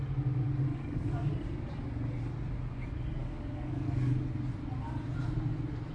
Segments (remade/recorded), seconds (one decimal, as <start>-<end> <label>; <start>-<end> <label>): 0.0-0.7 recorded; 0.7-1.3 remade; 1.3-3.2 recorded; 3.2-4.1 remade; 4.1-5.9 recorded